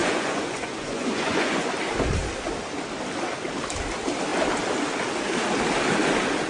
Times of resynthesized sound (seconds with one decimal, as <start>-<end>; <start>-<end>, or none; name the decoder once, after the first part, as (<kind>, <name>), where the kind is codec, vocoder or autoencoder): 0.0-1.7 (vocoder, Vocos)